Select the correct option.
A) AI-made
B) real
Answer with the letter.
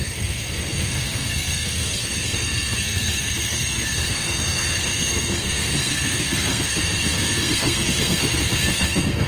A